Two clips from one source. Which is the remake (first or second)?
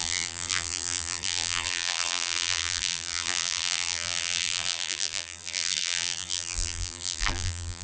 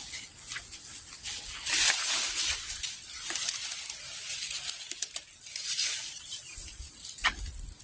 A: first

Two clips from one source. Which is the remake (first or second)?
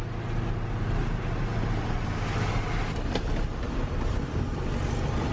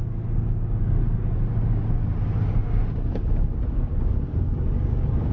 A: second